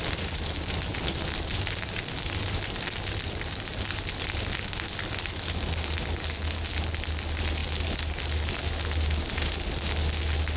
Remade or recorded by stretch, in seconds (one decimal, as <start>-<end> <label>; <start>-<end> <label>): 0.0-10.6 recorded